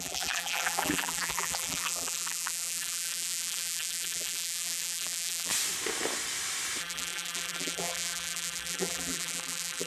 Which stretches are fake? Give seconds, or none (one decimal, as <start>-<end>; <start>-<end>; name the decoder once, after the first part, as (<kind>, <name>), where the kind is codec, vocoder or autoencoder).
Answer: 0.0-5.5 (vocoder, BigVGAN v2); 6.8-9.9